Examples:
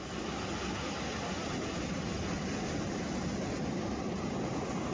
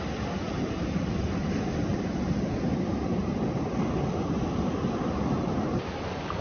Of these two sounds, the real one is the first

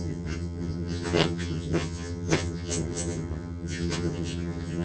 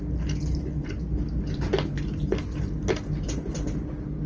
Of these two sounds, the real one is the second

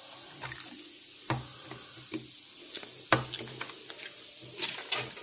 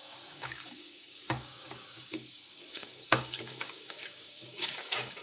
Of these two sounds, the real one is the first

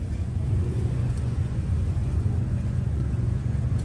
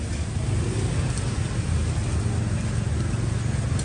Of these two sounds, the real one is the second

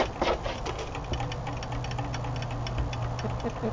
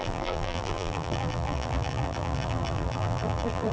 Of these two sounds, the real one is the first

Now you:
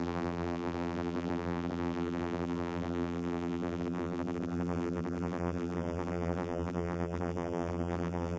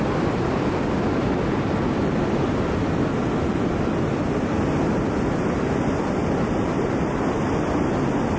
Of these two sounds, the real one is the second